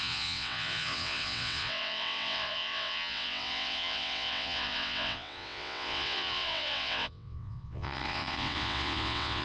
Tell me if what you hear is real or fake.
fake